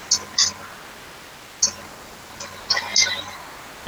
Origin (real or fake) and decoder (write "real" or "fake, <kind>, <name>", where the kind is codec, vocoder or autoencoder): real